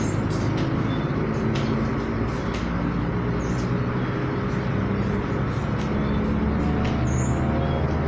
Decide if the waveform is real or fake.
real